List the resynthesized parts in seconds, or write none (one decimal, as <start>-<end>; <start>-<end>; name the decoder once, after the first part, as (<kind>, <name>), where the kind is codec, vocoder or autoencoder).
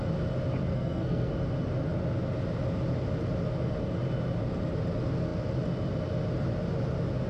0.7-1.3 (codec, SNAC)